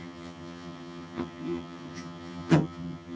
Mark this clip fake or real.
fake